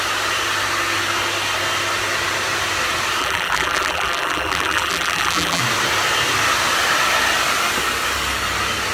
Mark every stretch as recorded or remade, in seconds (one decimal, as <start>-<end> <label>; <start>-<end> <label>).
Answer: 0.0-3.2 recorded; 3.2-5.6 remade; 5.6-8.9 recorded